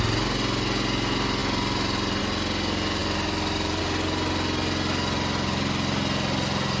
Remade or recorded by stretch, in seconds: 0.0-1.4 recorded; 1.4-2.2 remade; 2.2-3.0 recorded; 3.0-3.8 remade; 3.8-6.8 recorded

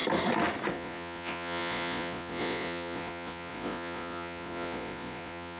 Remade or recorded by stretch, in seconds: 0.0-0.7 recorded; 0.7-5.6 remade

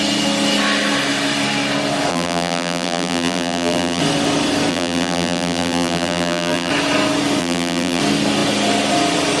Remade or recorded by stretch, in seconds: 0.0-2.1 recorded; 2.1-4.0 remade; 4.0-4.7 recorded; 4.7-6.7 remade; 6.7-7.4 recorded; 7.4-8.0 remade; 8.0-9.4 recorded

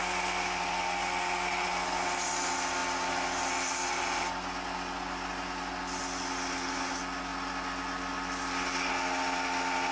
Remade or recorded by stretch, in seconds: 0.0-9.9 recorded